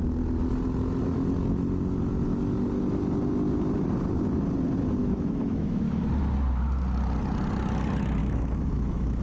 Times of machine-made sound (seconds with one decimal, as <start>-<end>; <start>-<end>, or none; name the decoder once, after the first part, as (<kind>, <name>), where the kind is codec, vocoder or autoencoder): 5.0-6.1 (autoencoder, DAC-VAE); 8.2-9.2

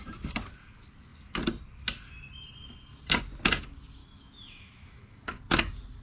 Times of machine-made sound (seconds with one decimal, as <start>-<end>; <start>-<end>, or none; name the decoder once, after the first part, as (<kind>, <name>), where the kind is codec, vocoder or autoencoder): 4.0-5.4 (autoencoder, DAC-VAE)

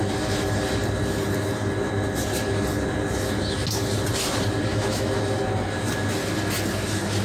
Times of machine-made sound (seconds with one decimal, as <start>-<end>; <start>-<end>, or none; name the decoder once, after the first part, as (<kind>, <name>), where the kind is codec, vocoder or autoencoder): 4.7-5.2 (autoencoder, DAC-VAE)

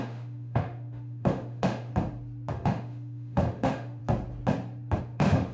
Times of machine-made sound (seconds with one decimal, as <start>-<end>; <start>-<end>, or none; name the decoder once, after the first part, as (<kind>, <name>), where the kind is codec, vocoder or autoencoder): 0.0-1.9 (autoencoder, DAC-VAE); 2.5-4.0; 5.0-5.5

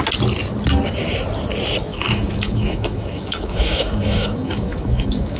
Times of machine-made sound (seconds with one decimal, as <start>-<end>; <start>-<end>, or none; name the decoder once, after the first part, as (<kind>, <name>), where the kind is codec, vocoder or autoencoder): 1.9-5.4 (autoencoder, DAC-VAE)

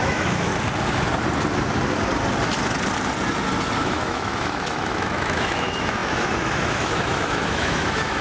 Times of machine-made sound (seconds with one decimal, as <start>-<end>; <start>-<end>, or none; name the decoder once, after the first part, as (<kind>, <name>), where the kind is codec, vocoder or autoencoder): 0.0-0.5 (autoencoder, DAC-VAE); 3.8-8.2

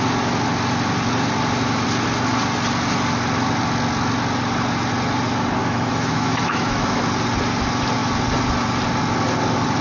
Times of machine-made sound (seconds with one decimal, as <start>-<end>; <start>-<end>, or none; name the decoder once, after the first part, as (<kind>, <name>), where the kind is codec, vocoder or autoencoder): 5.6-7.0 (autoencoder, DAC-VAE)

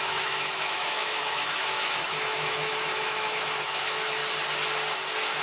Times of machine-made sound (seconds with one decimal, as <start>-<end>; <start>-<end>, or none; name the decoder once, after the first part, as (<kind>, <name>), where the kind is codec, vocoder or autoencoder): 0.0-4.2 (autoencoder, DAC-VAE)